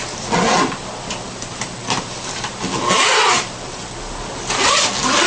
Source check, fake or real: real